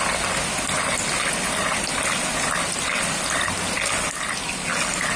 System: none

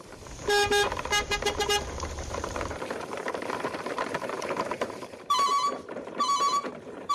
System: vocoder, BigVGAN v2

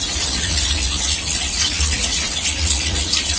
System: vocoder, Vocos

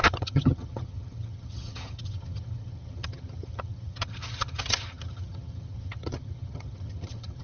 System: vocoder, HiFi-GAN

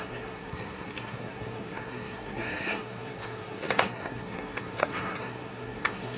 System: codec, SNAC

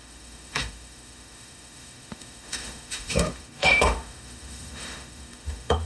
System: autoencoder, DAC-VAE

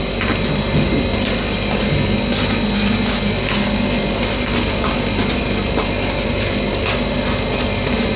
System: none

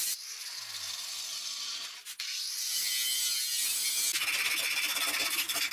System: none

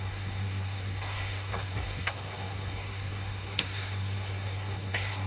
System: codec, SNAC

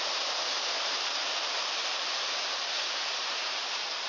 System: vocoder, BigVGAN v2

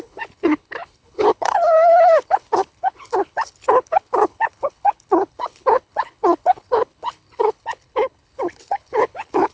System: codec, HILCodec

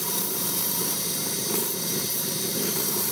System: vocoder, BigVGAN v2